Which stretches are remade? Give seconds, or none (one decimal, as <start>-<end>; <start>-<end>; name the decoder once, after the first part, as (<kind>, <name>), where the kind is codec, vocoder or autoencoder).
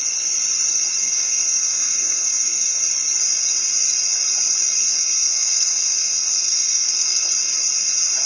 1.0-2.8 (codec, SNAC); 4.8-7.3